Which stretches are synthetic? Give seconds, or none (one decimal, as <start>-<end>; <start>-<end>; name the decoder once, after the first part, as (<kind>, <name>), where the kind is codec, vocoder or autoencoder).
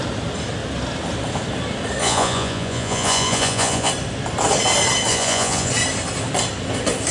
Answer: 2.0-3.9 (vocoder, Vocos); 5.1-5.7